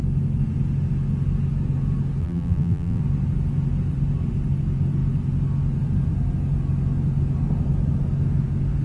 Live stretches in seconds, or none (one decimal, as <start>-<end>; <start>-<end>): 0.0-2.2; 3.0-8.8